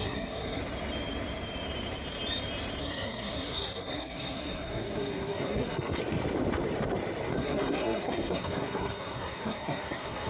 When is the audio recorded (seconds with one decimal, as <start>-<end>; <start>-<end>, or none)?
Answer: 0.6-2.8; 6.0-7.3

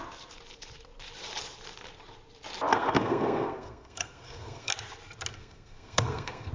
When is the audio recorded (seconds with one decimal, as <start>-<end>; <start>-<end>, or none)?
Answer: 0.0-2.7; 4.7-5.3

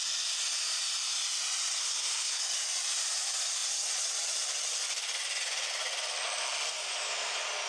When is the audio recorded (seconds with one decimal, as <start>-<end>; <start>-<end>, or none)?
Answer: 0.0-1.8; 2.4-7.7

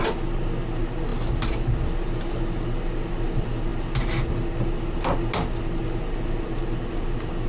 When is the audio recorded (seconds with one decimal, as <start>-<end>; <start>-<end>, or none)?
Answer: 0.0-7.5

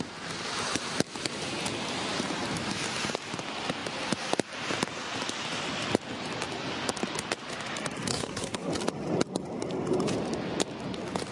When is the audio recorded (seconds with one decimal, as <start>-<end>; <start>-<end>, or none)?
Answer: 0.0-8.1; 8.7-11.3

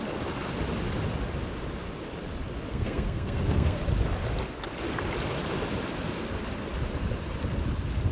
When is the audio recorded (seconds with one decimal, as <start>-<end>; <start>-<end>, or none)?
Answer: 0.0-2.7; 3.8-8.1

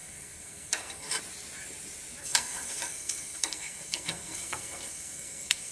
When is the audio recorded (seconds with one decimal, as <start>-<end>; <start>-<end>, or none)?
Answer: 1.2-2.2